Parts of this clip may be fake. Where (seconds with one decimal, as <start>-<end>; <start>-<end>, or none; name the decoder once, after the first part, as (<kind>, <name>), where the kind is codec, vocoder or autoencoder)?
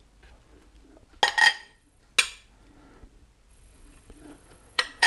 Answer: 1.5-2.0 (vocoder, WaveNeXt); 3.5-5.1